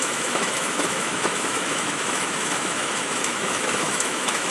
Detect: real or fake fake